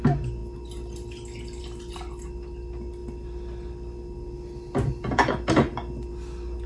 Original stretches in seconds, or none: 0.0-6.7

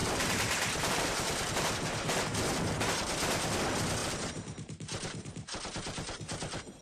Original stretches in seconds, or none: 1.5-4.0; 6.2-6.8

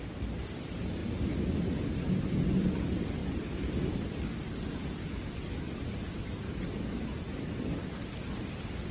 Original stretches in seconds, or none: none

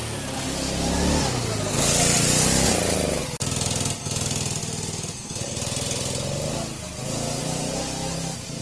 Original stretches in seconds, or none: 0.0-8.6

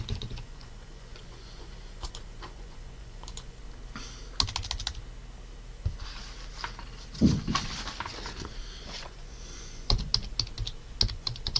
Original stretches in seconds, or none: 3.6-8.8; 10.1-11.1

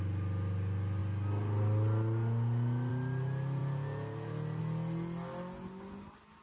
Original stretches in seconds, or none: 0.0-6.4